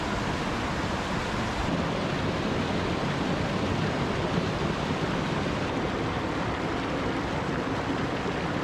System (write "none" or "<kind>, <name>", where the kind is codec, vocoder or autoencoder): none